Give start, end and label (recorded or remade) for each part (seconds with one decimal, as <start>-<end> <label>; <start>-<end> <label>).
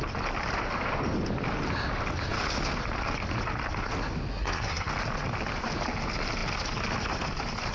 0.0-4.3 recorded; 4.3-4.9 remade; 4.9-7.7 recorded